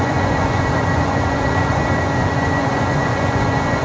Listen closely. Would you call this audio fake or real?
fake